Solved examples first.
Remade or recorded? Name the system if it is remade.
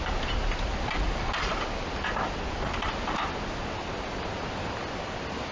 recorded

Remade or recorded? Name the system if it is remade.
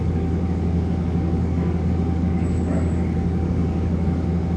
remade, codec, DAC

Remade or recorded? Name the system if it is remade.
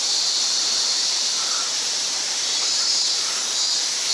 remade, vocoder, BigVGAN v2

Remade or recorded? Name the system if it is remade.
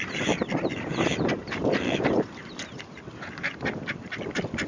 remade, vocoder, BigVGAN v2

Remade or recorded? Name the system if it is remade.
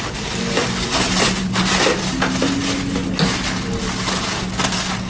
recorded